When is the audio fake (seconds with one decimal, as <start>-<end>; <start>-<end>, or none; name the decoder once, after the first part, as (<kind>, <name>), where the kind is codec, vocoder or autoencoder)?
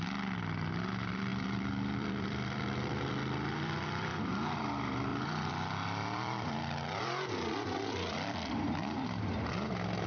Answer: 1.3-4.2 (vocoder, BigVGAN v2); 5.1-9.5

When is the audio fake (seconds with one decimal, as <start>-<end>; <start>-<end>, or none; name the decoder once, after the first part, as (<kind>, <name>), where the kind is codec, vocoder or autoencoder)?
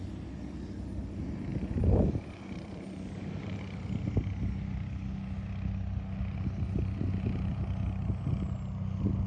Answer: 1.5-3.6 (vocoder, BigVGAN v2)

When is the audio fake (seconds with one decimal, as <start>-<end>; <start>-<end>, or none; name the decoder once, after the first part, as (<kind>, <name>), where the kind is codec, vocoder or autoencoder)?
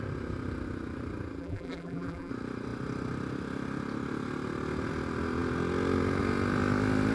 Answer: 1.4-2.3 (vocoder, BigVGAN v2)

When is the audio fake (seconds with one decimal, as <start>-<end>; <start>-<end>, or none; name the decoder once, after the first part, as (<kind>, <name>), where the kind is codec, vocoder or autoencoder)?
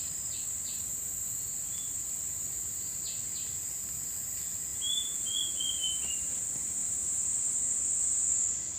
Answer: 0.9-2.1 (vocoder, BigVGAN v2); 6.8-7.5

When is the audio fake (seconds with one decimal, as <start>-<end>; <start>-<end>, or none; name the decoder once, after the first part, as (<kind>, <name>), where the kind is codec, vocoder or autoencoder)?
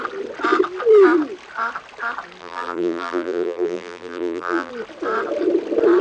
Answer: 2.4-4.7 (vocoder, BigVGAN v2)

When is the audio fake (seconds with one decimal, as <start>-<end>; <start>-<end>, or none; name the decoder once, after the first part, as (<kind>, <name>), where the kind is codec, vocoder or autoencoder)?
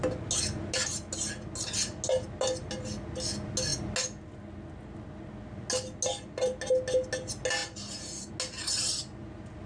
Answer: 7.6-8.3 (vocoder, BigVGAN v2)